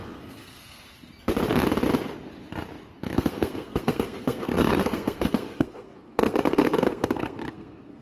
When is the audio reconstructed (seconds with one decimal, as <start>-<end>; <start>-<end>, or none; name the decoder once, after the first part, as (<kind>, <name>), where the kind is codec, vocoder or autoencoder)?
0.0-0.8 (codec, SNAC); 3.0-8.0